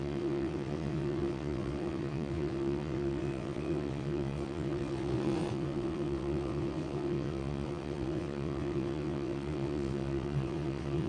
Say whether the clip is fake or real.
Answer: fake